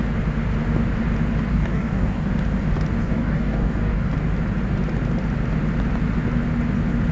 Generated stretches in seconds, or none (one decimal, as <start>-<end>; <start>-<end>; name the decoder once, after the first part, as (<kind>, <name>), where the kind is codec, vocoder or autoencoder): 1.5-2.3 (codec, DAC); 3.0-4.1